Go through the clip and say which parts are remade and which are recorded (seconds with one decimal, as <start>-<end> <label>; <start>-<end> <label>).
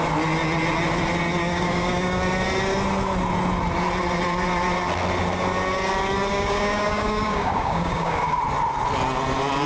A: 0.0-1.4 recorded; 1.4-2.2 remade; 2.2-6.3 recorded; 6.3-8.4 remade; 8.4-9.7 recorded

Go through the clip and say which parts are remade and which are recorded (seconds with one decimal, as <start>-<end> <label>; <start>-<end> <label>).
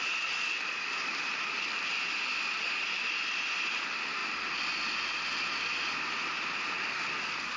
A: 0.0-7.6 recorded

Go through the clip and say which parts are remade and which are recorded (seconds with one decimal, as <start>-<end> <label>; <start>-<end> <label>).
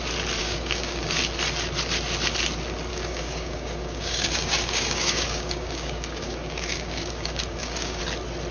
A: 0.0-0.4 recorded; 0.4-1.2 remade; 1.2-2.9 recorded; 2.9-8.0 remade; 8.0-8.5 recorded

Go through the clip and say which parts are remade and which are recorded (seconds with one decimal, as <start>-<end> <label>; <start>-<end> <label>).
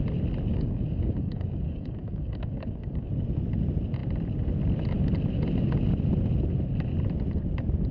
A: 0.0-0.5 recorded; 0.5-3.1 remade; 3.1-7.9 recorded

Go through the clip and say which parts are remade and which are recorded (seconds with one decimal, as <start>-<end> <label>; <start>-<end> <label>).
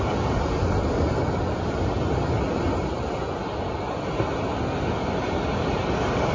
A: 0.0-6.3 recorded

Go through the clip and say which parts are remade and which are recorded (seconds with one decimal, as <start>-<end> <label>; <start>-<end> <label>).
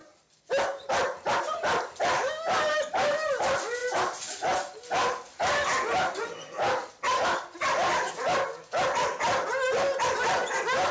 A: 0.0-10.9 recorded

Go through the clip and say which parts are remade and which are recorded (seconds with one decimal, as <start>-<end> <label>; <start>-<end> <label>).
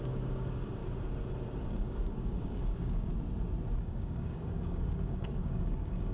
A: 0.0-0.8 remade; 0.8-1.6 recorded; 1.6-3.1 remade; 3.1-3.8 recorded; 3.8-6.1 remade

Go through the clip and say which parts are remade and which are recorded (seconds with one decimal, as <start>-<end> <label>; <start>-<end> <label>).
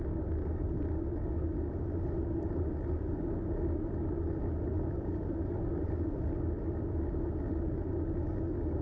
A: 0.0-8.8 recorded